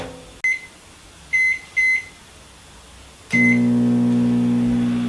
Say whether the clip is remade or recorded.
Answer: recorded